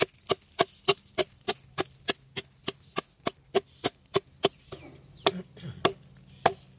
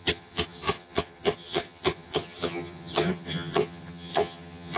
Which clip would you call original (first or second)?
first